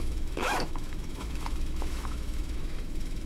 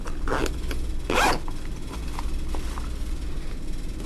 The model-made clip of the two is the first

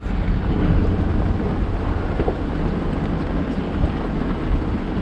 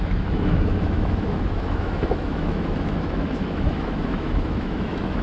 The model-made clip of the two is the second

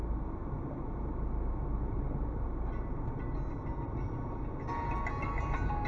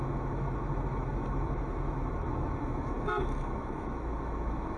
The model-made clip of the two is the second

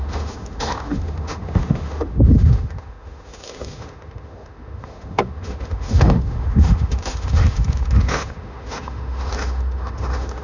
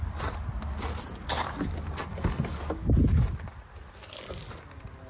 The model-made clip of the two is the first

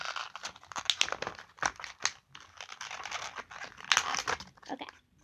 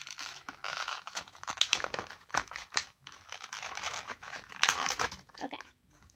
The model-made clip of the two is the second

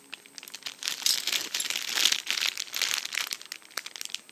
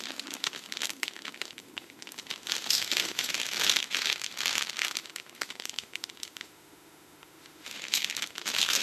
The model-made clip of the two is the second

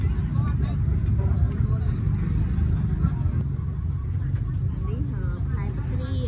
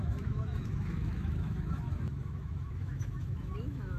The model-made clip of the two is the second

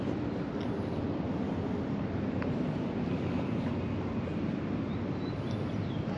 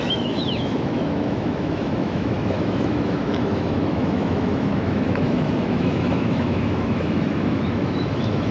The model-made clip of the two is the second